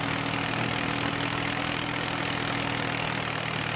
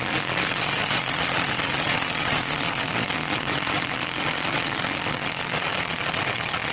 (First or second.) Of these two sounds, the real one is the first